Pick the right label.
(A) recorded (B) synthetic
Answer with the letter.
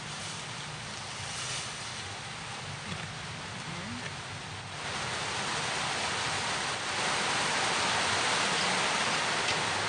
A